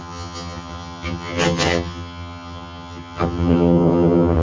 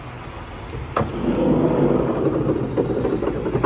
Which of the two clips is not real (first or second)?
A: first